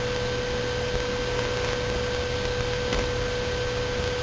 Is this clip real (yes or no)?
yes